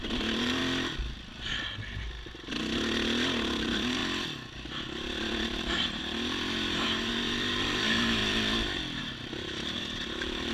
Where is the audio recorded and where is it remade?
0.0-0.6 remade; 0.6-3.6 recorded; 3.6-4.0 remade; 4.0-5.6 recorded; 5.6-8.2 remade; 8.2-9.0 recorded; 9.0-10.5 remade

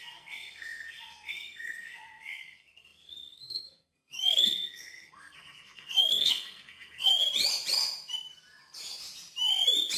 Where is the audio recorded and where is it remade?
0.0-7.1 remade; 7.1-10.0 recorded